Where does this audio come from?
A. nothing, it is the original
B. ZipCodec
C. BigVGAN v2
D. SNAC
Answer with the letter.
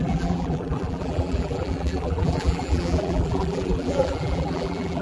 C